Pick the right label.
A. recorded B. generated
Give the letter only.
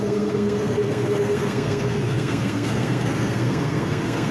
B